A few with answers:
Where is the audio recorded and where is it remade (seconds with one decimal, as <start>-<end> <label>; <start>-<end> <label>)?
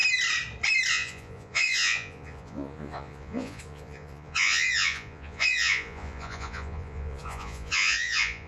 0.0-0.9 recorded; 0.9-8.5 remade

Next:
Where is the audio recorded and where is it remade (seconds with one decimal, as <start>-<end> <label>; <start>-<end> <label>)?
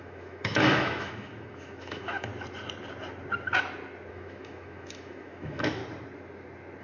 0.0-2.3 remade; 2.3-4.1 recorded; 4.1-5.8 remade; 5.8-6.8 recorded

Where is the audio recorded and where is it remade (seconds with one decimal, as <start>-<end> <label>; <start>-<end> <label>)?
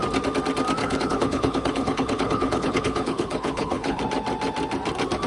0.0-0.8 recorded; 0.8-4.0 remade; 4.0-5.3 recorded